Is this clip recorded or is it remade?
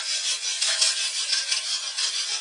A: remade